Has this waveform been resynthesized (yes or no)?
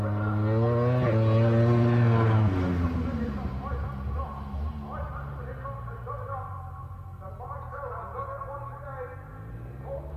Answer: no